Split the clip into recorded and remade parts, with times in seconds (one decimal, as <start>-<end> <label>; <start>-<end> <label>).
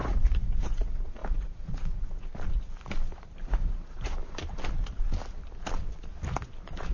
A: 0.0-2.3 remade; 2.3-3.4 recorded; 3.4-4.2 remade; 4.2-6.9 recorded